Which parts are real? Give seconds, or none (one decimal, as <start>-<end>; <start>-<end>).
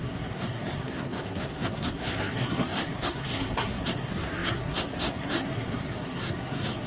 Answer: none